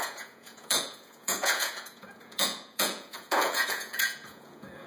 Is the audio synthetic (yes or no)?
yes